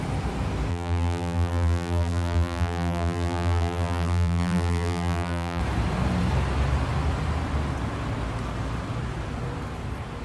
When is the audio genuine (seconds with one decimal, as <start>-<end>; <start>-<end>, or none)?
0.0-0.7; 5.6-10.2